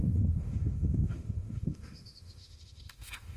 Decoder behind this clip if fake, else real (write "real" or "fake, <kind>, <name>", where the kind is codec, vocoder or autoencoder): fake, autoencoder, DAC-VAE